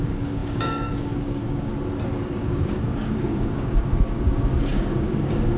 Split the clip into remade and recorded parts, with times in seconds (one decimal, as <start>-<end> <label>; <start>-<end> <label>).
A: 0.0-1.7 remade; 1.7-2.4 recorded; 2.4-5.6 remade